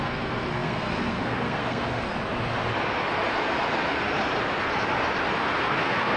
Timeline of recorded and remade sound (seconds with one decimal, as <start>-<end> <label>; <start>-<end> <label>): 0.0-2.1 remade; 2.1-5.8 recorded; 5.8-6.2 remade